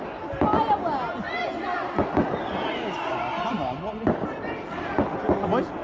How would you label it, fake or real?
real